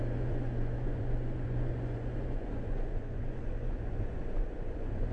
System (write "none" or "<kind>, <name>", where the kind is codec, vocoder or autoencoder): vocoder, Vocos